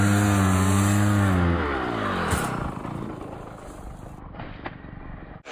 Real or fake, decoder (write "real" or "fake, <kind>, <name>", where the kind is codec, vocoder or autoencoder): real